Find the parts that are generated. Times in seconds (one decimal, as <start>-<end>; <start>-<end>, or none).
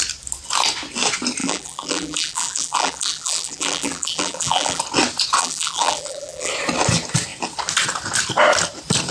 1.4-4.8; 5.4-6.5